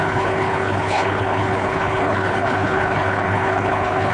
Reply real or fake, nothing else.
fake